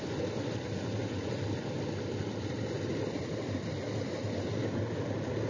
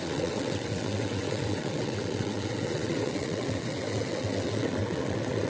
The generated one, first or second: second